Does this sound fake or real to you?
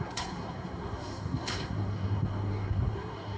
fake